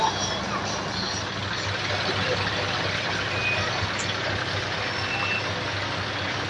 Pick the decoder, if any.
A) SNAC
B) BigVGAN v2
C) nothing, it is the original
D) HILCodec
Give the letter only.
C